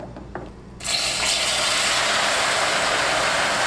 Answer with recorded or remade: recorded